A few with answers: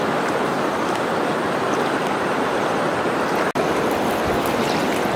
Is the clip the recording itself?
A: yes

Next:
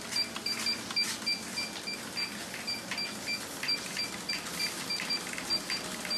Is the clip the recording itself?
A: yes